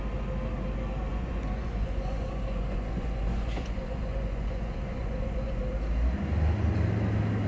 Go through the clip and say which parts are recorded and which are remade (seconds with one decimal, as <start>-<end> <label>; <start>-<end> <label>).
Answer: 0.0-1.1 recorded; 1.1-5.6 remade; 5.6-7.5 recorded